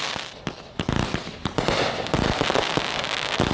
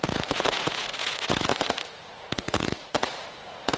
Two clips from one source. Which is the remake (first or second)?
second